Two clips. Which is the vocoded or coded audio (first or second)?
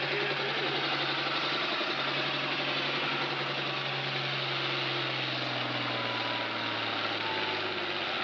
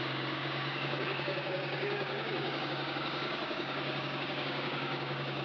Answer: second